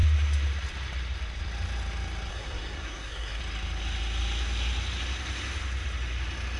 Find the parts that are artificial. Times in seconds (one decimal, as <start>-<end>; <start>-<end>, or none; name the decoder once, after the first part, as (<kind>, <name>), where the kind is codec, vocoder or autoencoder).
2.3-3.4 (codec, SNAC)